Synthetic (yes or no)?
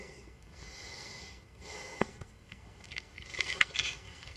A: yes